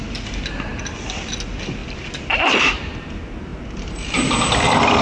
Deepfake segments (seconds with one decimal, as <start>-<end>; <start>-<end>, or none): none